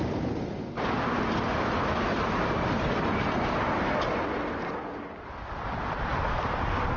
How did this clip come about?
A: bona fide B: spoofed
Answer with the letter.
A